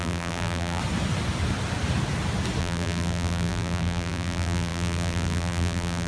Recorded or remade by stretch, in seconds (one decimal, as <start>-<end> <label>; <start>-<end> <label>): 0.0-0.8 remade; 0.8-2.6 recorded; 2.6-6.1 remade